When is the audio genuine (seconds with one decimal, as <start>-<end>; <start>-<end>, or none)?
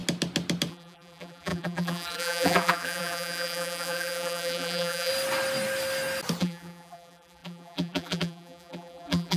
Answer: 0.0-0.7; 5.1-6.4